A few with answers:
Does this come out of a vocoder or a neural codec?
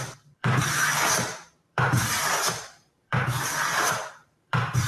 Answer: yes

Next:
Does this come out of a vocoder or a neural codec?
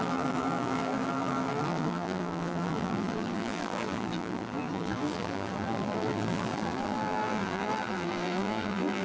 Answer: yes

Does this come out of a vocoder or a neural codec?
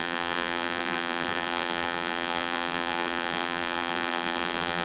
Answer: yes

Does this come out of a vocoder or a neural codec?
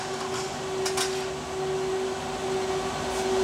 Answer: no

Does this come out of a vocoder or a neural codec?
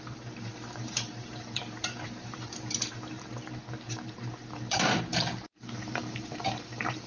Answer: yes